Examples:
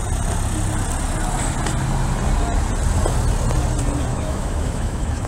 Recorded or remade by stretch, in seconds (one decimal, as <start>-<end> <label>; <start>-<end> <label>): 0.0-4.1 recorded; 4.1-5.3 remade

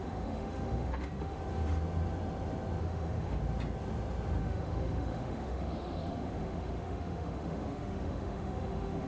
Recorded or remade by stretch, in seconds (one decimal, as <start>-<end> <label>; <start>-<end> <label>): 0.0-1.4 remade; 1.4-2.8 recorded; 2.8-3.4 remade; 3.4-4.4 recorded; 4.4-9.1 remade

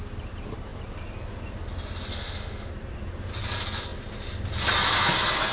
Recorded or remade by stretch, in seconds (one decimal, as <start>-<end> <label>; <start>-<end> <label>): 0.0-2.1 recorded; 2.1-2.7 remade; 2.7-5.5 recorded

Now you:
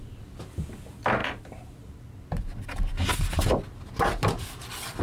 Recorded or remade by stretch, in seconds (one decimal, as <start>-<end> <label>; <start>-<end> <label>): 0.0-5.0 recorded